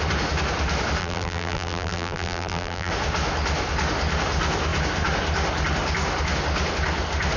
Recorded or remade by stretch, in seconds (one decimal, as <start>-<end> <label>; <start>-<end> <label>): 0.0-1.0 recorded; 1.0-2.9 remade; 2.9-7.4 recorded